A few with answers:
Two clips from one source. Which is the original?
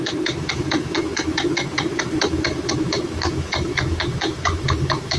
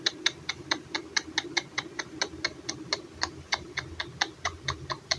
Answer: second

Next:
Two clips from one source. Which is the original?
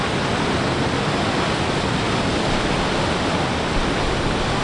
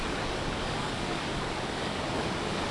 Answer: first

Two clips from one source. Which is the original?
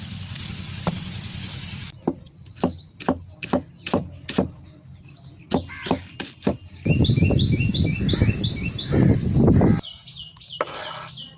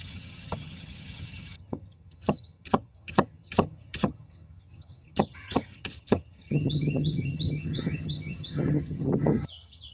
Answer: first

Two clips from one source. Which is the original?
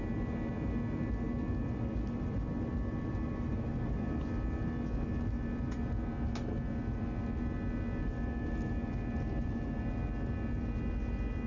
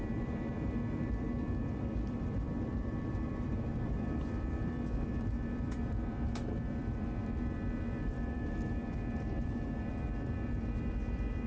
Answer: first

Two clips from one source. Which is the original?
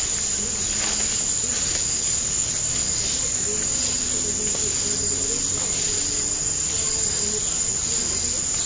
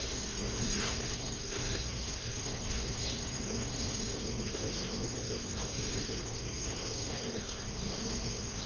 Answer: first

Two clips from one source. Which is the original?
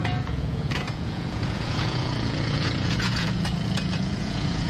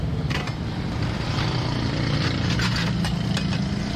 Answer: second